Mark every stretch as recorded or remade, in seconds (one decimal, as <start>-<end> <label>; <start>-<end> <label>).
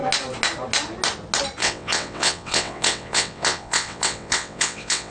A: 0.0-1.6 recorded; 1.6-5.1 remade